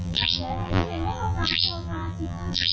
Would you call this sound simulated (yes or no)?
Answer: yes